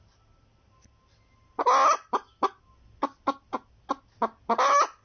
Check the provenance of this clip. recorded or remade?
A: recorded